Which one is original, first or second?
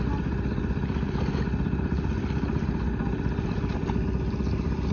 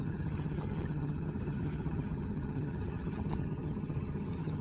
first